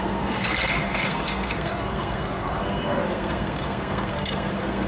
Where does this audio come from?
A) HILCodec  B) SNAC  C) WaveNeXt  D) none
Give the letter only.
B